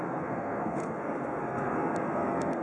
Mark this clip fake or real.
fake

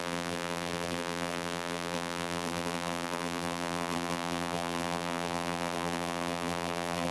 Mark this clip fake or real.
fake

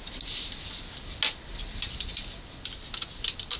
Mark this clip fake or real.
real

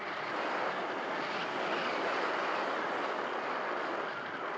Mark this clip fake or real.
real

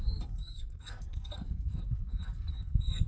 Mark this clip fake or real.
fake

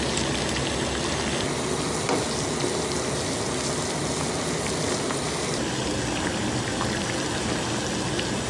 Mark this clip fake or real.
real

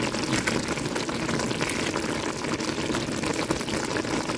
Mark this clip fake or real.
real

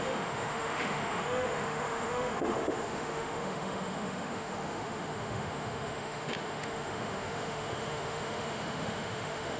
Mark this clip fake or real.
fake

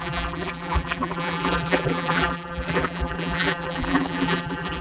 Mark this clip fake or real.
fake